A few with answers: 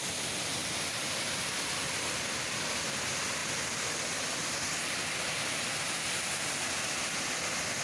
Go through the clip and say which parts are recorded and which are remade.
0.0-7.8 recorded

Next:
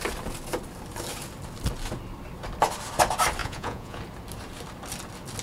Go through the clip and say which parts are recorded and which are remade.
0.0-3.4 recorded; 3.4-4.0 remade; 4.0-5.4 recorded

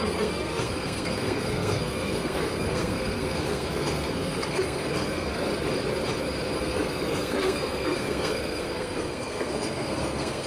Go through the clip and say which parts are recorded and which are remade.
0.0-5.5 remade; 5.5-6.6 recorded; 6.6-10.5 remade

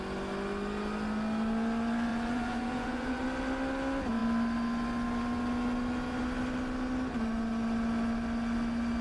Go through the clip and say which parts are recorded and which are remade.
0.0-2.1 recorded; 2.1-3.2 remade; 3.2-9.0 recorded

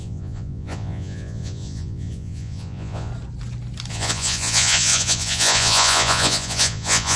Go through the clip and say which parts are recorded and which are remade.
0.0-3.1 remade; 3.1-3.9 recorded; 3.9-7.2 remade